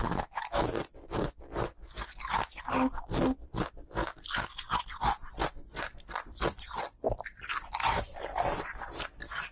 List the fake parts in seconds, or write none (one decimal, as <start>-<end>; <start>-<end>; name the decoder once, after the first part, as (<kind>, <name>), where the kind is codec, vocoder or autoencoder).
0.0-0.7 (autoencoder, DAC-VAE)